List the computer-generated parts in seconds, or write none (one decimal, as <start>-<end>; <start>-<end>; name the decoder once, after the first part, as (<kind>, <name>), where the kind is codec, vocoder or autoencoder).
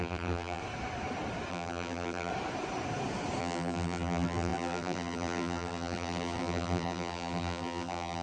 0.0-0.6 (vocoder, BigVGAN v2); 1.5-2.3; 3.4-8.2